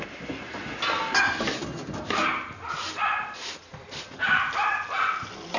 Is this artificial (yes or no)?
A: no